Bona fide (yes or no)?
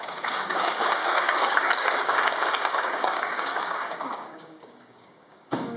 no